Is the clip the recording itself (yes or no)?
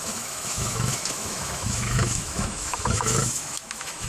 no